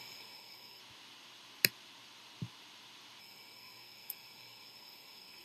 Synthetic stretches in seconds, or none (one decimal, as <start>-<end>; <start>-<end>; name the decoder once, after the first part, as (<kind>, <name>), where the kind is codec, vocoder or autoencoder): 0.0-0.8 (codec, SNAC); 3.2-5.4